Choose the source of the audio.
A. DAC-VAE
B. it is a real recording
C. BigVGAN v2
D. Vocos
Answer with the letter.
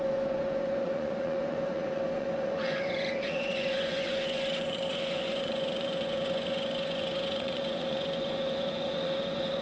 D